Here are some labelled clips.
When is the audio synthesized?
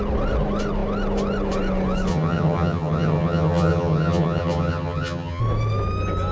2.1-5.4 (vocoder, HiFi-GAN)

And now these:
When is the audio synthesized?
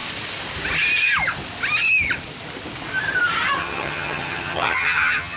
3.6-5.4 (vocoder, HiFi-GAN)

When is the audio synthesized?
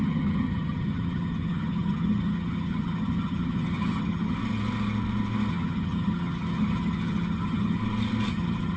0.0-4.4 (vocoder, HiFi-GAN); 5.5-7.8; 8.3-8.8